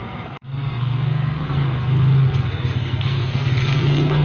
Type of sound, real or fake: fake